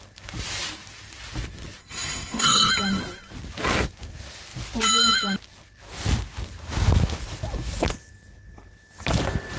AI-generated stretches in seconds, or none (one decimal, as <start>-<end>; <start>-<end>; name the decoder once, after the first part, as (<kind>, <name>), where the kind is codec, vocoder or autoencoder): 1.8-2.7 (codec, SNAC)